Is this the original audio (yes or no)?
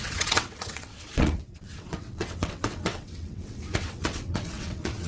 no